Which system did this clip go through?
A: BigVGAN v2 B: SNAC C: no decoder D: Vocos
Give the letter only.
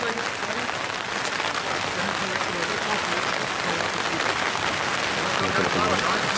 C